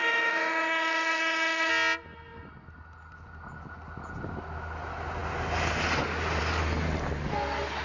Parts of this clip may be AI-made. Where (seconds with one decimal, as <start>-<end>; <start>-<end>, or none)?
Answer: 0.0-1.7